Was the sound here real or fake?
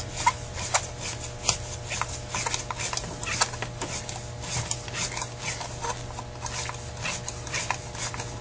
real